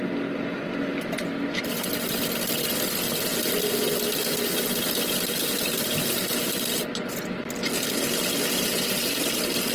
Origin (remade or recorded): recorded